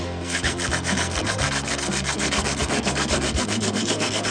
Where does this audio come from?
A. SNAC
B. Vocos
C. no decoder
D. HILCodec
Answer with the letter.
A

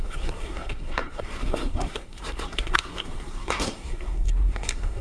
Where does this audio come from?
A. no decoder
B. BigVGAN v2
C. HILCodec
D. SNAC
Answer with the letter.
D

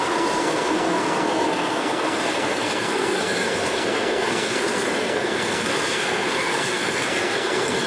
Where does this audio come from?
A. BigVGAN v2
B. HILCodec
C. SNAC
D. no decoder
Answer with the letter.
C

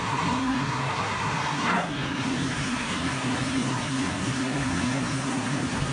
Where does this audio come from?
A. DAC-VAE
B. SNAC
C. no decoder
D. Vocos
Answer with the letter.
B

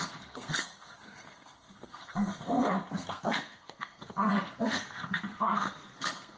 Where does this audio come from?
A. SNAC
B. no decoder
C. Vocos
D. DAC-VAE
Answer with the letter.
A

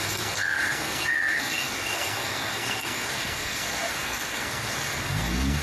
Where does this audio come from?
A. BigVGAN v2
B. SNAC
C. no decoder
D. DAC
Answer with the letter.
B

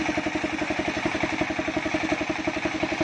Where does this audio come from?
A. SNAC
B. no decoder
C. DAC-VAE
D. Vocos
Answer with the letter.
B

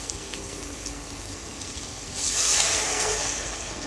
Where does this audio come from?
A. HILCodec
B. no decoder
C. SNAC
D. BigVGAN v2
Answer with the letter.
C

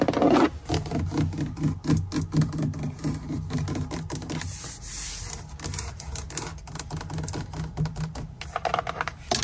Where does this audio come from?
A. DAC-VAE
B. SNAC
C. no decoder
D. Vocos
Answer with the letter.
C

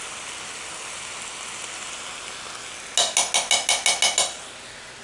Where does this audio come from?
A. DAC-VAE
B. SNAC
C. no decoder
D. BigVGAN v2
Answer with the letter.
C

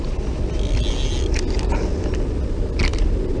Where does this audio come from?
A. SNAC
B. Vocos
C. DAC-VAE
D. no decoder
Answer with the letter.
D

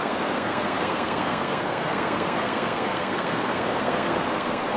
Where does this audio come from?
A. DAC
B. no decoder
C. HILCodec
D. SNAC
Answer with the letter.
D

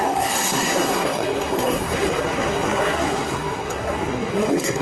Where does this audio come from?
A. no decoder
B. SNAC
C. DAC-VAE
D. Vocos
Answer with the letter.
B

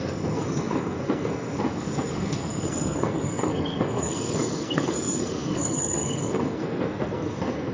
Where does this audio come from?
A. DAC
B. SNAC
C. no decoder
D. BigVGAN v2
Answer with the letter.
B